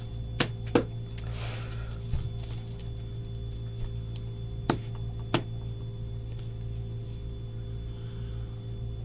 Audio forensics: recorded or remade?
recorded